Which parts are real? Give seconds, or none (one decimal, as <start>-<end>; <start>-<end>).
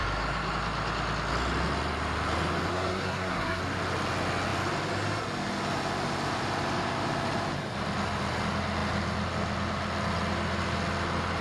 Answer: 0.0-2.7; 3.6-11.4